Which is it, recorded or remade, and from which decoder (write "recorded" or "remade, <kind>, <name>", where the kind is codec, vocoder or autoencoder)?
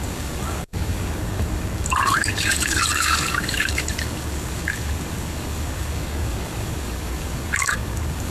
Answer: remade, codec, DAC